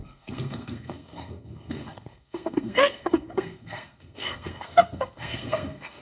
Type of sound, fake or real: fake